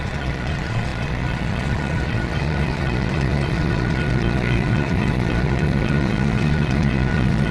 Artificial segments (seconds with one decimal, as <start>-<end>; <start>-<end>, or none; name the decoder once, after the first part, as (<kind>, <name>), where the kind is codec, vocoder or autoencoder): 0.0-7.5 (vocoder, Vocos)